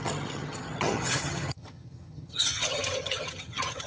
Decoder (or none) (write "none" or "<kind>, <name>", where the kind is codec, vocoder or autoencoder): vocoder, HiFi-GAN